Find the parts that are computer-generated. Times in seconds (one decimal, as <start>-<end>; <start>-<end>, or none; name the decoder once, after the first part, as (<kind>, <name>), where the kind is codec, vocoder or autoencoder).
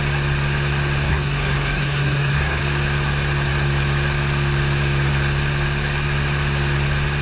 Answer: 1.1-2.6 (codec, SNAC)